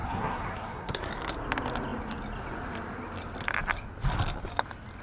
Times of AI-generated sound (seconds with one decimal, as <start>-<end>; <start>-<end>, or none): 0.0-1.1

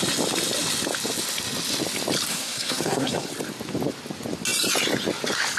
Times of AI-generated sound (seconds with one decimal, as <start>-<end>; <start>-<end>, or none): 2.3-3.3

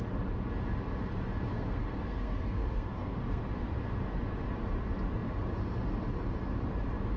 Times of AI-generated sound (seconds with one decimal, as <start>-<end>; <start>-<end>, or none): 1.5-3.4